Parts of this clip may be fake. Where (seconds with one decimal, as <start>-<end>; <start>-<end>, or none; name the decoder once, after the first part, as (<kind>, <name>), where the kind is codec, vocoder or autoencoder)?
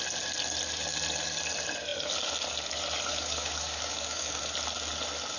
3.1-4.4 (codec, DAC)